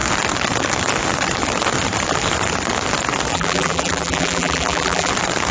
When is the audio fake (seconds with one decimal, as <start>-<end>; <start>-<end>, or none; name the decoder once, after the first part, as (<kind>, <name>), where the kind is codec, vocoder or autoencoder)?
3.3-5.1 (vocoder, BigVGAN v2)